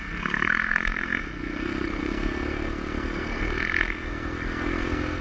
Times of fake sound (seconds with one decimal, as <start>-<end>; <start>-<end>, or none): 0.0-5.2